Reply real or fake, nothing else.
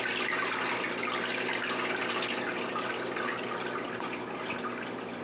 real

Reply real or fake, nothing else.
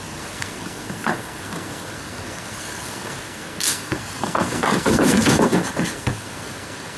fake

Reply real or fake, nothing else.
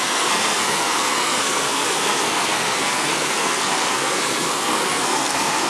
fake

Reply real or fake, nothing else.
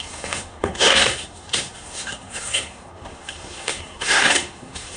fake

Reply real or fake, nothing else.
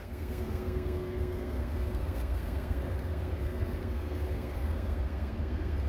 fake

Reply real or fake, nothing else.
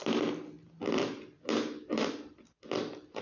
real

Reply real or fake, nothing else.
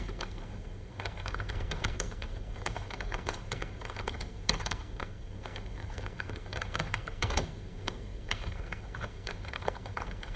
fake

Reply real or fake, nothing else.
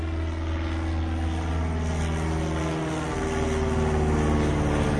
real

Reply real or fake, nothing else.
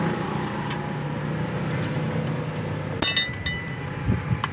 real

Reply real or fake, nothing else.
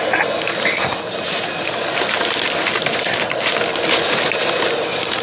real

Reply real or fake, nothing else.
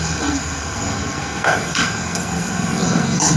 fake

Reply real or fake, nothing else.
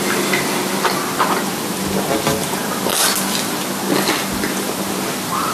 real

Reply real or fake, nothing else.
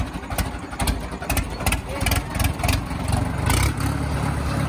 real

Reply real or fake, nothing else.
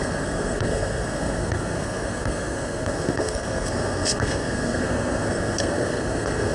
fake